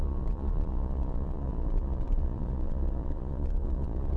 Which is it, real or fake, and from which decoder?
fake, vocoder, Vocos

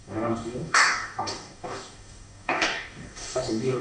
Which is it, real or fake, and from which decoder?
fake, codec, DAC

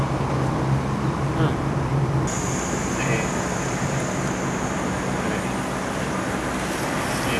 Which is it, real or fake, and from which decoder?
real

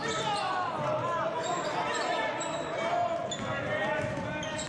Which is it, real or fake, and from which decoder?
real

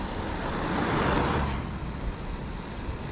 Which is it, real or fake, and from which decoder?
real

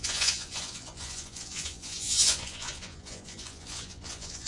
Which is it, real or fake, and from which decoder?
fake, vocoder, Vocos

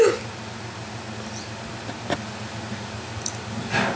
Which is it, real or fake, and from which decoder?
real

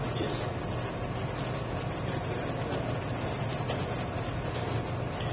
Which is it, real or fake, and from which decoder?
real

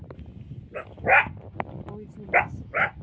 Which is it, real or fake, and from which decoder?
real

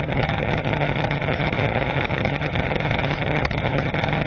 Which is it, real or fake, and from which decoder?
fake, vocoder, HiFi-GAN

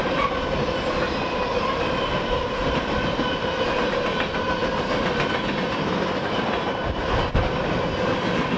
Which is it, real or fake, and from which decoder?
real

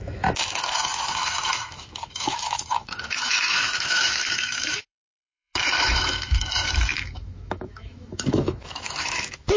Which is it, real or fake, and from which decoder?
fake, autoencoder, DAC-VAE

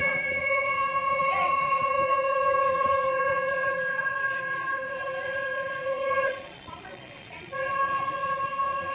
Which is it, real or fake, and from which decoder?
fake, vocoder, Vocos